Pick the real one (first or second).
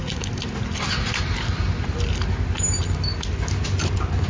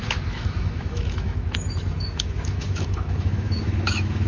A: first